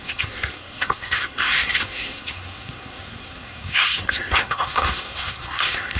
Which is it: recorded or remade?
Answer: remade